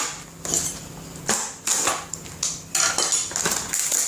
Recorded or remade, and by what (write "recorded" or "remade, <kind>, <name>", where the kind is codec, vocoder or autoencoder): recorded